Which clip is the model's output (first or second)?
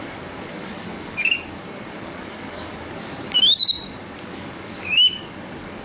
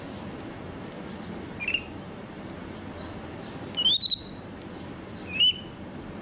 first